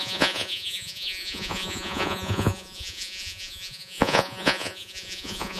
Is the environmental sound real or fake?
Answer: fake